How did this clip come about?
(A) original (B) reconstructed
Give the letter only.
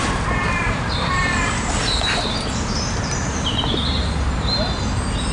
B